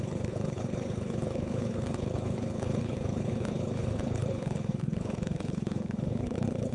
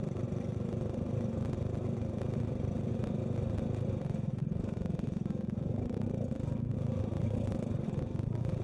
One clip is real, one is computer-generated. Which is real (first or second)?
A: second